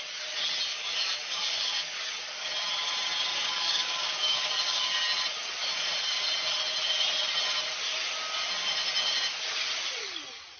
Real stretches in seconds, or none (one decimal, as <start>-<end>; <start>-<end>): 0.0-0.7; 1.7-3.3; 4.9-10.6